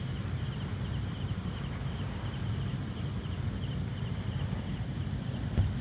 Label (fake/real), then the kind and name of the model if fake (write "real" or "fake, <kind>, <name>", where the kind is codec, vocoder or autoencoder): real